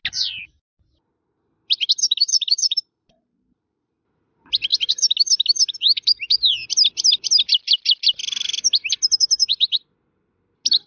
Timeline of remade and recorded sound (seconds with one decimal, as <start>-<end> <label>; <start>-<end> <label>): 0.0-2.2 recorded; 2.2-3.9 remade; 3.9-10.9 recorded